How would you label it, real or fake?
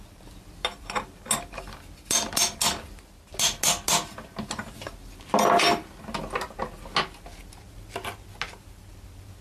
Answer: real